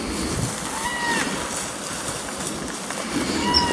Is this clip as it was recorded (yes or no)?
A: yes